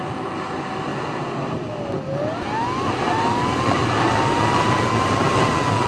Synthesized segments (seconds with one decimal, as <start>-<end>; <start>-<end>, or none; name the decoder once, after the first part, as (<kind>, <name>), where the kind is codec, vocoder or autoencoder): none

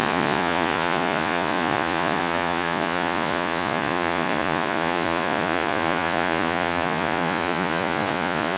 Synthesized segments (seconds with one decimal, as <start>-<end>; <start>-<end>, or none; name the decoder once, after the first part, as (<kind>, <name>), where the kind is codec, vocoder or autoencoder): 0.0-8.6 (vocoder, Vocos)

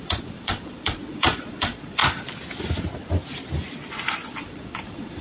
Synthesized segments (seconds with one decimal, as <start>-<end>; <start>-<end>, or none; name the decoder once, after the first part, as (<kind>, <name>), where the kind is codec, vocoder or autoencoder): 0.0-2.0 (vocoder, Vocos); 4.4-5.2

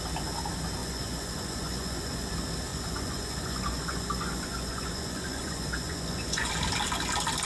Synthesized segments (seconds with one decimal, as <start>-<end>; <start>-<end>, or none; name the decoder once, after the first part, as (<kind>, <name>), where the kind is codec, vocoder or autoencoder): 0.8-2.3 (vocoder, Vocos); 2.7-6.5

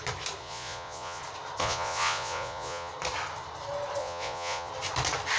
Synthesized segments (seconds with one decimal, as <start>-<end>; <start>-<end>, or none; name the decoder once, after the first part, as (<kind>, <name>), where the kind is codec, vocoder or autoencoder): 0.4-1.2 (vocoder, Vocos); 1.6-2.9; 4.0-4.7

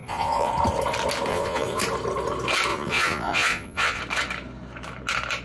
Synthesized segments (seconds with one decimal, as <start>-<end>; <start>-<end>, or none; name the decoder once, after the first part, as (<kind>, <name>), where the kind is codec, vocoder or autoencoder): 0.0-0.5 (vocoder, Vocos); 1.3-1.8; 2.7-4.0

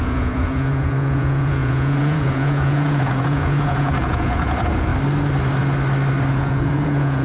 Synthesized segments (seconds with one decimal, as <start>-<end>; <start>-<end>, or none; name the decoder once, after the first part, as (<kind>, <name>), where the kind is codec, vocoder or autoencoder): 0.0-4.9 (vocoder, Vocos); 6.3-7.2

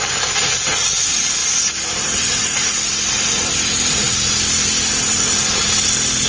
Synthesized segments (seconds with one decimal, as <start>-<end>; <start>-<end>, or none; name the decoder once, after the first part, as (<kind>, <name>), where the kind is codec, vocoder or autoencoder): none